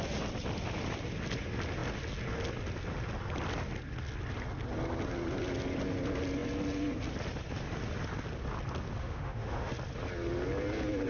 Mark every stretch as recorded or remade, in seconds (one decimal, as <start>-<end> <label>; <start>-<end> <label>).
0.0-9.0 recorded; 9.0-9.7 remade; 9.7-11.1 recorded